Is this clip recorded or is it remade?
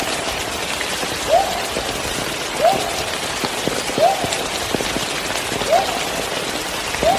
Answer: recorded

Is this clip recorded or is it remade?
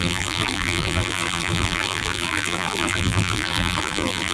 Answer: remade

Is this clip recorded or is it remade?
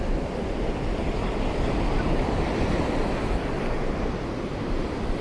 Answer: recorded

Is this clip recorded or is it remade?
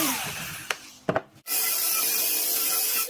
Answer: remade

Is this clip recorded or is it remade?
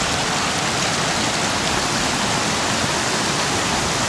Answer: recorded